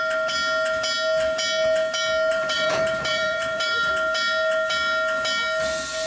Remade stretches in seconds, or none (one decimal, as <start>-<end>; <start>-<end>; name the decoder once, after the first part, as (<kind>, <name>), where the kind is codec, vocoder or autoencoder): 2.3-3.9 (vocoder, BigVGAN v2)